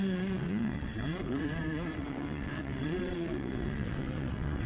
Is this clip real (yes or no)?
no